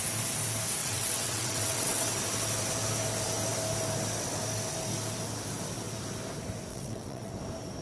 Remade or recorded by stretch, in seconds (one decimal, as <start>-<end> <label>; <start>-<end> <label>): 0.0-0.8 recorded; 0.8-2.1 remade; 2.1-6.7 recorded; 6.7-7.3 remade; 7.3-7.8 recorded